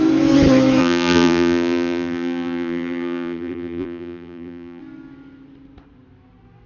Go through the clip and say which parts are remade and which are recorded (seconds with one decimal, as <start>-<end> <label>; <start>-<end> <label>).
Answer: 0.0-0.8 recorded; 0.8-4.8 remade; 4.8-6.7 recorded

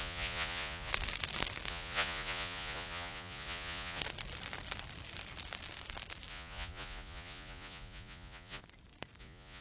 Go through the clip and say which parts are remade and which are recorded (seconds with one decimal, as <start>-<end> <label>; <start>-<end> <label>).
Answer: 0.0-0.9 remade; 0.9-1.7 recorded; 1.7-4.0 remade; 4.0-6.3 recorded; 6.3-8.6 remade; 8.6-9.2 recorded; 9.2-9.6 remade

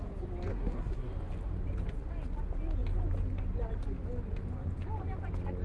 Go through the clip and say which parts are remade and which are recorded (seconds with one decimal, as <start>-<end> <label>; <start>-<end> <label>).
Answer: 0.0-0.5 recorded; 0.5-1.1 remade; 1.1-5.6 recorded

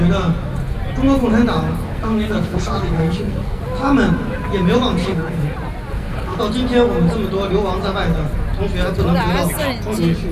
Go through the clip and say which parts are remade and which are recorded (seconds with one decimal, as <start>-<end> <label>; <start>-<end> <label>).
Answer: 0.0-1.8 recorded; 1.8-3.6 remade; 3.6-5.0 recorded; 5.0-5.5 remade; 5.5-5.9 recorded; 5.9-6.4 remade; 6.4-10.3 recorded

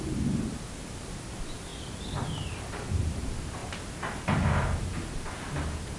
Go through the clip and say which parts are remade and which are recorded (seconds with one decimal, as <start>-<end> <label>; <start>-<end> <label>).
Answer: 0.0-6.0 recorded

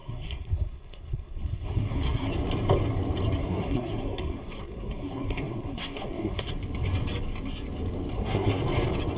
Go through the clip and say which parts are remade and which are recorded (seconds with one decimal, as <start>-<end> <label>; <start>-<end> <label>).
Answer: 0.0-2.3 remade; 2.3-3.4 recorded; 3.4-6.5 remade; 6.5-8.1 recorded; 8.1-8.6 remade; 8.6-9.2 recorded

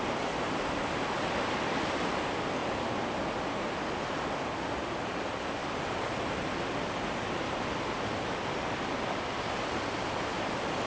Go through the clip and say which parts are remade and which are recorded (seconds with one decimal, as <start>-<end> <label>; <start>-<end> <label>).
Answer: 0.0-10.9 recorded